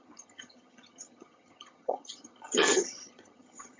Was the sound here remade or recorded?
remade